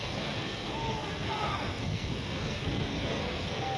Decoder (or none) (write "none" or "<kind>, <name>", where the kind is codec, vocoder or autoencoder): codec, SNAC